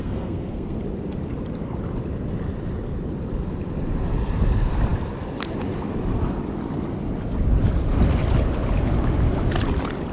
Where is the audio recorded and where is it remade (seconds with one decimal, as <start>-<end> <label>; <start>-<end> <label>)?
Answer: 0.0-0.8 remade; 0.8-10.1 recorded